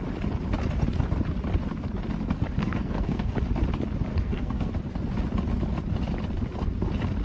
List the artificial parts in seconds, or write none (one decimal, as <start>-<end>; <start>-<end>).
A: 2.6-3.3; 4.1-4.7